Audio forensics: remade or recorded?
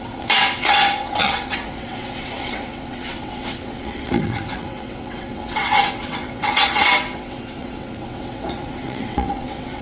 remade